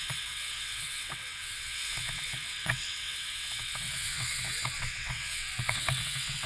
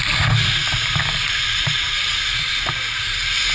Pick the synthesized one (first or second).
first